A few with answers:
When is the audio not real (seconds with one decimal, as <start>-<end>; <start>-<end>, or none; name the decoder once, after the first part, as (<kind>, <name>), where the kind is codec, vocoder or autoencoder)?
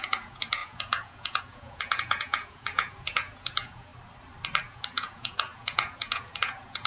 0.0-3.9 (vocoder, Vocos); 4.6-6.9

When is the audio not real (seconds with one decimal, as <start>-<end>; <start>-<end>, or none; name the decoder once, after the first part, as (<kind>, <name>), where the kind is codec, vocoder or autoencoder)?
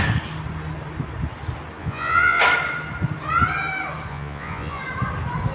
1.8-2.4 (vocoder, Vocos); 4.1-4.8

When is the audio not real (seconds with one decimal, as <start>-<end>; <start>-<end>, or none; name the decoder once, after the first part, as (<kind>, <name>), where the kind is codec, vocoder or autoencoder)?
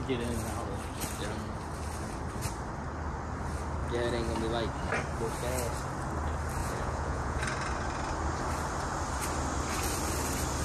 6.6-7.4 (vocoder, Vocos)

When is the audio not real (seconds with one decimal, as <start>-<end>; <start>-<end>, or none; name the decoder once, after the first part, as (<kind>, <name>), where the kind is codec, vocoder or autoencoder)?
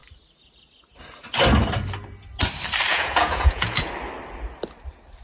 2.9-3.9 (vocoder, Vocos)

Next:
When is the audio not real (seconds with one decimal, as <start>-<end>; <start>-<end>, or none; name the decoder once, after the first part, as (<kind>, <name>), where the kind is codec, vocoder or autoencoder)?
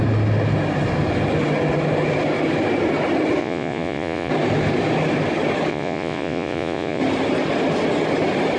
3.4-4.3 (vocoder, Vocos); 5.7-7.0